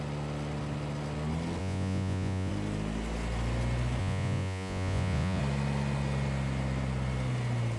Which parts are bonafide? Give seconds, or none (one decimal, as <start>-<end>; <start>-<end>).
0.0-1.6; 2.5-4.0; 5.4-7.8